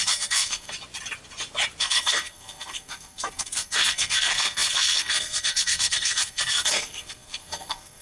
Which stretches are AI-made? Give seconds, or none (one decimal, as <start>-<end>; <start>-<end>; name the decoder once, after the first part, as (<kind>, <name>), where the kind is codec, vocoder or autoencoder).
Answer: 0.0-0.7 (codec, SNAC); 1.8-8.0